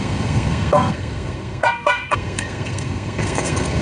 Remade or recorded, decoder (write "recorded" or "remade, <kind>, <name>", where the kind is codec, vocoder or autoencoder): remade, codec, SNAC